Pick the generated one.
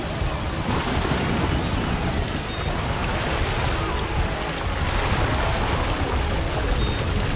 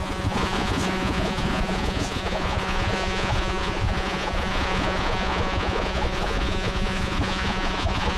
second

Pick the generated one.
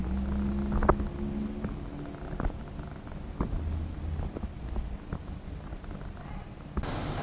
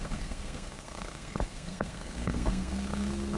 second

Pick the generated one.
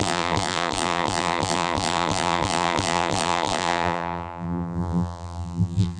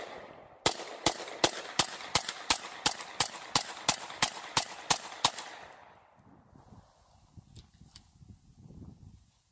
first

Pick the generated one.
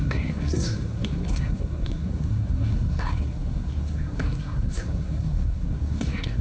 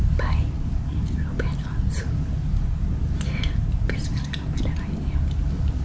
first